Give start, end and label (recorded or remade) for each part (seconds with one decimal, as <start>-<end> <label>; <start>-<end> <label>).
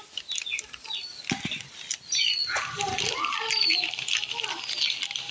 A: 0.0-5.3 recorded